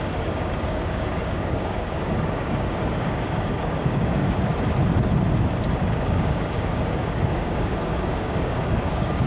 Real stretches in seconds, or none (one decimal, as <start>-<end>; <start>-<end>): 4.2-5.7

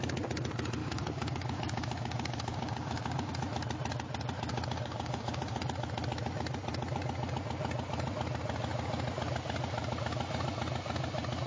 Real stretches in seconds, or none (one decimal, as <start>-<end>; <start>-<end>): 0.0-0.8; 3.3-4.5; 5.6-11.5

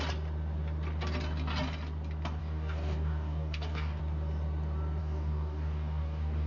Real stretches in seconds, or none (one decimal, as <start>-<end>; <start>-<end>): 0.0-2.4; 4.0-5.0

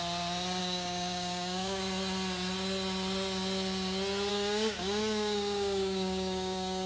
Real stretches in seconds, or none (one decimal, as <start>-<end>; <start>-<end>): 0.0-0.6; 1.8-4.3

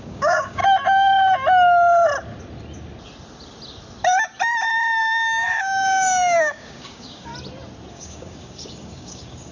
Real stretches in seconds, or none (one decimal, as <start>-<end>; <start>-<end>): 0.6-5.0; 7.3-7.9

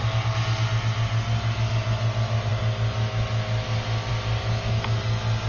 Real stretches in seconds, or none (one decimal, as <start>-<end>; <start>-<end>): 0.0-5.5

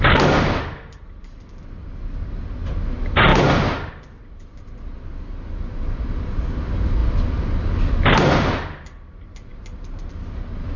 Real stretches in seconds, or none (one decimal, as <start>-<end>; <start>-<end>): 0.0-10.8